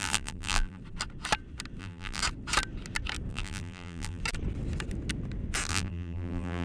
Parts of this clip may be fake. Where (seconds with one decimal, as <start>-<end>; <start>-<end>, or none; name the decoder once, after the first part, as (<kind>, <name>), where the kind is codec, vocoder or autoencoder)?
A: 0.0-0.8 (vocoder, BigVGAN v2); 1.8-2.2; 3.3-4.2; 5.7-6.6